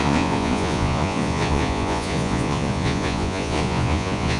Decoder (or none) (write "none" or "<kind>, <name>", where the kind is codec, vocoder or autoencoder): vocoder, Vocos